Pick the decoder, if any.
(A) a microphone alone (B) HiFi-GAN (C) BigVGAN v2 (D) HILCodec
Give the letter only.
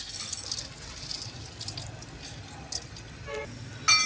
A